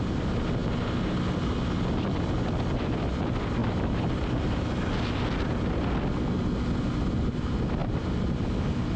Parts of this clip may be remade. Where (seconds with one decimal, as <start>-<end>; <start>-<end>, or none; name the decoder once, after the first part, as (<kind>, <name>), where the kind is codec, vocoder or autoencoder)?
none